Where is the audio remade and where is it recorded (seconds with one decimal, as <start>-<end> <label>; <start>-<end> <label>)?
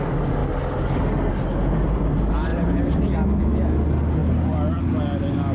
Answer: 0.0-0.4 recorded; 0.4-1.3 remade; 1.3-2.5 recorded; 2.5-3.4 remade; 3.4-5.5 recorded